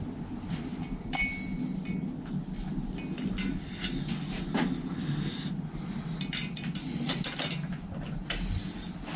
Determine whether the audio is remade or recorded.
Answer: recorded